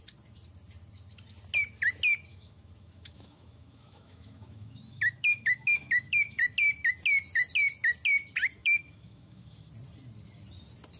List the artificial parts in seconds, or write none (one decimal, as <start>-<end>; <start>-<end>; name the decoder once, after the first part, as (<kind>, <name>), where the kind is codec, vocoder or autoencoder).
2.3-6.4 (autoencoder, DAC-VAE); 8.6-9.7